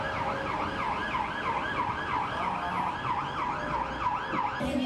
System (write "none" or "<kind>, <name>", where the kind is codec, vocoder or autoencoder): none